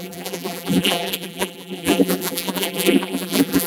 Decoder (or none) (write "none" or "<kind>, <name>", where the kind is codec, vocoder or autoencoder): vocoder, BigVGAN v2